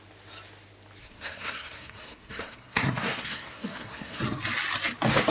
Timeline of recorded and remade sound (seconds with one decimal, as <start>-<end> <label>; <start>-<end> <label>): 0.0-1.0 recorded; 1.0-4.2 remade; 4.2-5.3 recorded